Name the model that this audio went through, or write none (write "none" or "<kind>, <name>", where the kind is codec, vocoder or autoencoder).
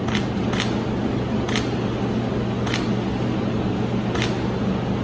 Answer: none